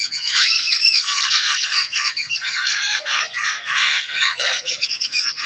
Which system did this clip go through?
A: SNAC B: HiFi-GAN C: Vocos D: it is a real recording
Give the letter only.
A